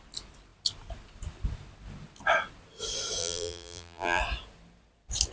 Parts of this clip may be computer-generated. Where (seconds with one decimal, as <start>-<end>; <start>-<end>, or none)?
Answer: 3.2-4.2